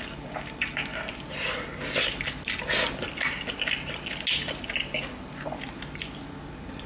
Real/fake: real